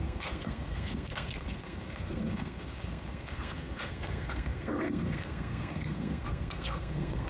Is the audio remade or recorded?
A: remade